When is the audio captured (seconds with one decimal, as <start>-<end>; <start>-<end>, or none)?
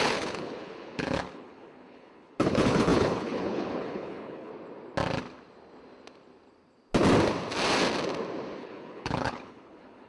4.5-8.6